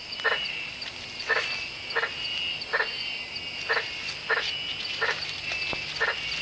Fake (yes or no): no